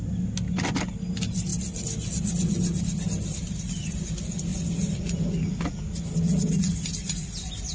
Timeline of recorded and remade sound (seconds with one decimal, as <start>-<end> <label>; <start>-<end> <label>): 0.0-7.7 recorded